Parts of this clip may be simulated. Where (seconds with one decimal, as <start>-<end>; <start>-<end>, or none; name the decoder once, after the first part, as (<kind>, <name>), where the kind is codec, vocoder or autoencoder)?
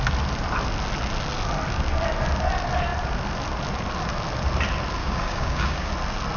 5.0-5.9 (codec, DAC)